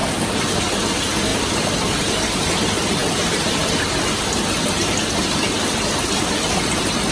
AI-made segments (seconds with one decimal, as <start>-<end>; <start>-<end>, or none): 0.0-0.6; 1.3-2.4